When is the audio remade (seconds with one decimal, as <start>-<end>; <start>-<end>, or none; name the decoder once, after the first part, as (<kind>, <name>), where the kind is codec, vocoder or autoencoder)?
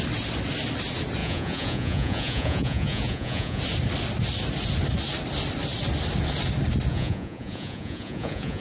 1.2-3.6 (vocoder, Vocos); 6.9-8.6